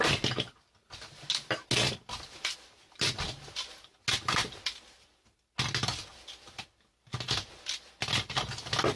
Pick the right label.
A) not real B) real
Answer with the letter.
B